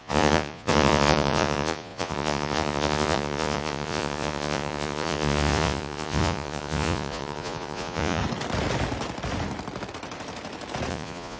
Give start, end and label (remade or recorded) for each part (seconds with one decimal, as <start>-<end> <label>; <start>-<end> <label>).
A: 0.0-8.2 remade; 8.2-10.9 recorded; 10.9-11.4 remade